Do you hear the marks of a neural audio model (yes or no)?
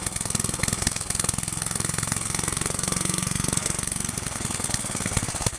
yes